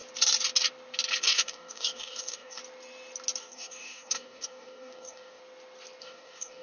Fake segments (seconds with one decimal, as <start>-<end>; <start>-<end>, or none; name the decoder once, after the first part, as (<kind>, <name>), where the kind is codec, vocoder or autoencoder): 1.2-2.6 (codec, DAC); 3.4-5.4; 6.0-6.6